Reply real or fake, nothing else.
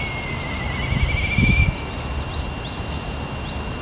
real